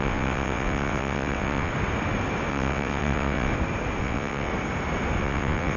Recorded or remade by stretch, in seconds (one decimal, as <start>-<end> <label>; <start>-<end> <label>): 0.0-1.7 remade; 1.7-2.5 recorded; 2.5-3.5 remade; 3.5-4.0 recorded; 4.0-4.5 remade; 4.5-5.2 recorded; 5.2-5.8 remade